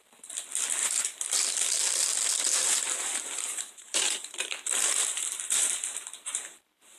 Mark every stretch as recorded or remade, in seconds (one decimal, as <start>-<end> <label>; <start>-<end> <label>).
0.0-0.8 recorded; 0.8-1.3 remade; 1.3-2.5 recorded; 2.5-7.0 remade